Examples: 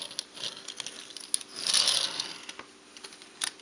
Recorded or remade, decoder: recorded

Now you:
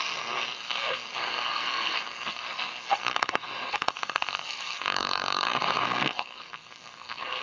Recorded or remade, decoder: remade, codec, SNAC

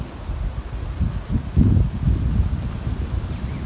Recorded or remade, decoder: recorded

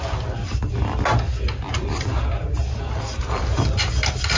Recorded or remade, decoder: recorded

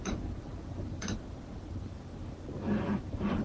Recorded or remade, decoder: recorded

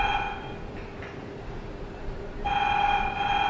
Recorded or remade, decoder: recorded